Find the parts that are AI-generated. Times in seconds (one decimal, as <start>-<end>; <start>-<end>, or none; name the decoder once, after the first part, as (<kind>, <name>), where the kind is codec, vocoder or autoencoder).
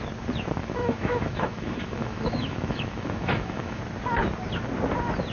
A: 0.6-3.8 (autoencoder, DAC-VAE)